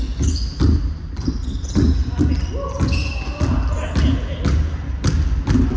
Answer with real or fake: real